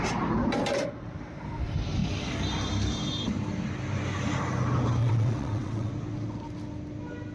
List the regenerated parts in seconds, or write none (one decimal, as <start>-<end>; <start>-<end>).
5.0-5.9